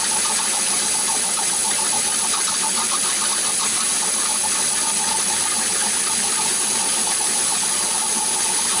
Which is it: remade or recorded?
recorded